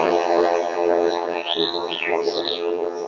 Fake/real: fake